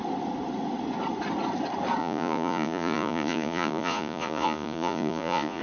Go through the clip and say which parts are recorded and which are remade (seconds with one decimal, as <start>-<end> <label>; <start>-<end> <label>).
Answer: 0.0-2.0 recorded; 2.0-5.6 remade